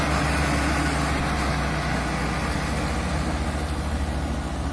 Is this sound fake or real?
real